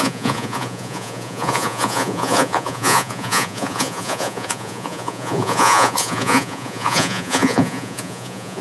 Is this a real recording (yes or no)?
no